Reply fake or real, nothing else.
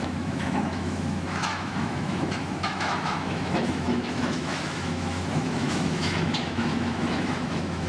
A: fake